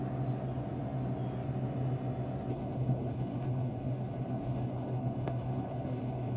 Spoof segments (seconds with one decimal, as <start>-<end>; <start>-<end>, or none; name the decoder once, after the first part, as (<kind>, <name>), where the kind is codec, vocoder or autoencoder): 2.5-6.4 (codec, HILCodec)